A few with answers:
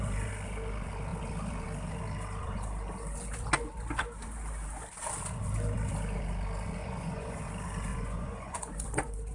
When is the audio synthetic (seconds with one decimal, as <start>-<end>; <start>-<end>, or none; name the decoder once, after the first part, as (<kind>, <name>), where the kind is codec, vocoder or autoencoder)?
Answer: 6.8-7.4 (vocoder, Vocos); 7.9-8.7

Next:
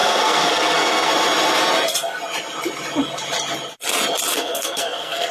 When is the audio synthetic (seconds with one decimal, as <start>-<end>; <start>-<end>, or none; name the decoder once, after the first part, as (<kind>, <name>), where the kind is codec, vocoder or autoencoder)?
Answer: 0.0-1.1 (codec, SNAC); 4.3-5.3

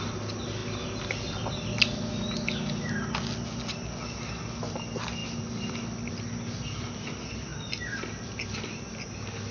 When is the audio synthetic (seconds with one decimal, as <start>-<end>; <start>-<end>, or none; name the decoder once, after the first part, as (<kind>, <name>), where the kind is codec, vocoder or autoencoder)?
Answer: none

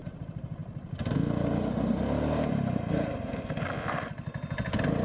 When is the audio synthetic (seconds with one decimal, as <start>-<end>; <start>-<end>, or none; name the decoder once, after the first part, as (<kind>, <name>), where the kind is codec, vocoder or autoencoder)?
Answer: none